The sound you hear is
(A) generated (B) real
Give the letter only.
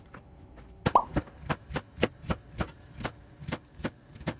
A